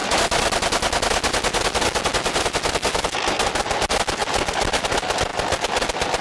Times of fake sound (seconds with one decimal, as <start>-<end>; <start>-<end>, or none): none